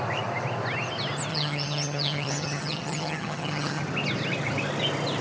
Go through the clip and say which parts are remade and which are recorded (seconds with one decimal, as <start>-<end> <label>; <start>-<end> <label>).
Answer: 0.0-1.3 recorded; 1.3-3.8 remade; 3.8-5.2 recorded